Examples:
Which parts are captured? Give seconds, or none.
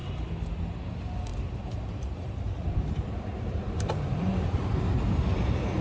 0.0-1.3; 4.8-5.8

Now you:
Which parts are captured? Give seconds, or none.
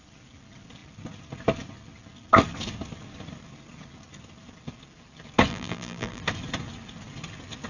0.0-5.5; 6.2-7.7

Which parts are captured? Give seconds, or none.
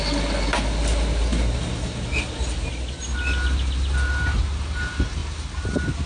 0.0-6.1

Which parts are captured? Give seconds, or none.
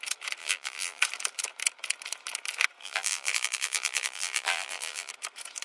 0.0-0.4; 1.0-2.8; 5.1-5.6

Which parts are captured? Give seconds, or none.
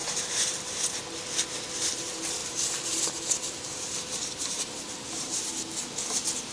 0.8-2.4; 5.5-6.5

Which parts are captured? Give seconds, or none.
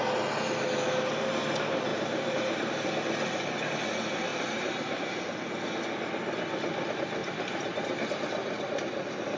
0.0-1.9; 2.7-4.3; 5.2-7.2; 8.1-9.4